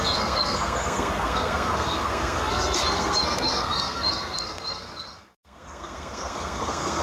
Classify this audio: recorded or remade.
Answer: remade